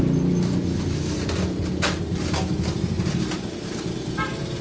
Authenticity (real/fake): real